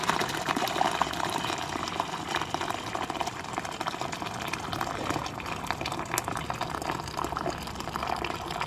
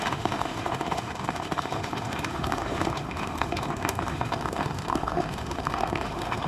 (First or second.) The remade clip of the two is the second